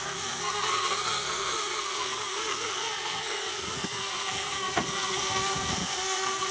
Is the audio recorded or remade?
remade